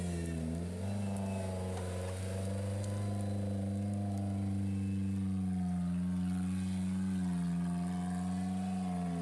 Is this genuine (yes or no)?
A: yes